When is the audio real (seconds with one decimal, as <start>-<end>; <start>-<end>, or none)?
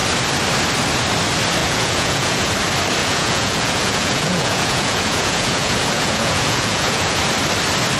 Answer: 0.0-1.6; 2.5-3.0; 7.2-8.0